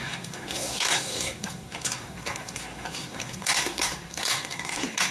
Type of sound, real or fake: fake